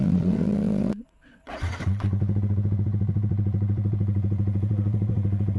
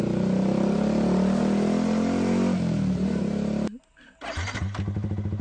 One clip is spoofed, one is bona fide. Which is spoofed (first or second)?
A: first